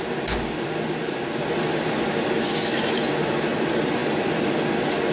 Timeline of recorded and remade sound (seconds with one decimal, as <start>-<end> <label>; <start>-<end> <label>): 0.0-5.1 recorded

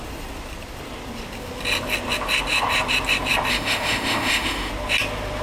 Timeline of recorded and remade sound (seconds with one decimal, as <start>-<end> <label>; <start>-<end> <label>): 0.0-3.5 recorded; 3.5-4.7 remade; 4.7-5.4 recorded

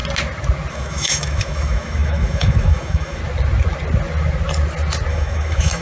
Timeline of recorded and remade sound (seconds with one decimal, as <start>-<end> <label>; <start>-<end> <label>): 0.0-0.7 recorded; 0.7-3.2 remade; 3.2-5.1 recorded; 5.1-5.8 remade

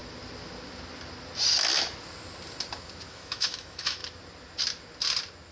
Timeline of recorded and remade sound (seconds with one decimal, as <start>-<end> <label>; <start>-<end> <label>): 0.0-3.1 recorded; 3.1-4.0 remade; 4.0-5.5 recorded

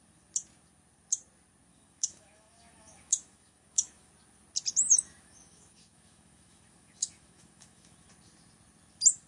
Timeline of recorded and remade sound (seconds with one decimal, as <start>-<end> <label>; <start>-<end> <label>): 0.0-1.7 recorded; 1.7-4.1 remade; 4.1-4.7 recorded; 4.7-8.1 remade; 8.1-9.3 recorded

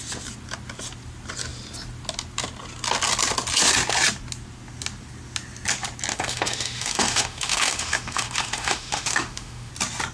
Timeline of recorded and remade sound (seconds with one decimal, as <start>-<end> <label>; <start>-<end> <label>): 0.0-6.1 recorded; 6.1-9.7 remade; 9.7-10.1 recorded